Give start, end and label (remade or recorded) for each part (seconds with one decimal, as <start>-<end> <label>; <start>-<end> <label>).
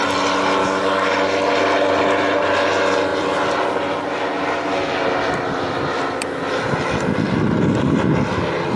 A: 0.0-0.6 recorded; 0.6-1.1 remade; 1.1-8.8 recorded